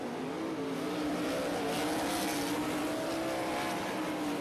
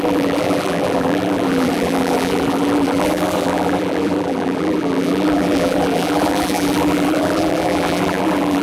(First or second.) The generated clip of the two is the second